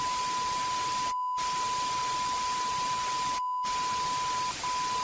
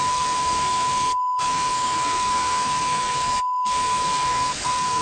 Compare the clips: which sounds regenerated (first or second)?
second